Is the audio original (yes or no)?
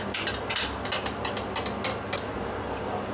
yes